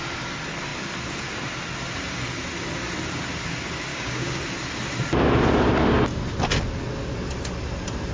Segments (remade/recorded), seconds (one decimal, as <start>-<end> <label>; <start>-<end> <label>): 0.0-3.9 recorded; 3.9-4.4 remade; 4.4-8.1 recorded

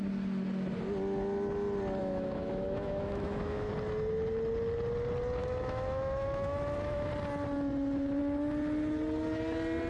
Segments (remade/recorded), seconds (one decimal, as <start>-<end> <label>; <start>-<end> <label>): 0.0-2.0 recorded; 2.0-3.7 remade; 3.7-5.4 recorded; 5.4-7.1 remade; 7.1-9.9 recorded

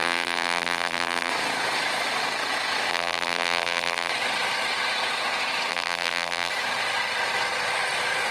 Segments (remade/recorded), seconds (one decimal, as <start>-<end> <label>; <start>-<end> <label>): 0.0-1.3 remade; 1.3-2.9 recorded; 2.9-4.1 remade; 4.1-5.7 recorded; 5.7-6.5 remade; 6.5-8.3 recorded

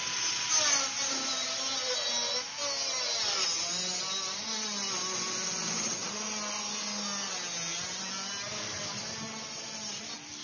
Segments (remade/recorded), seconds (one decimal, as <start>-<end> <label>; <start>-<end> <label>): 0.0-10.4 recorded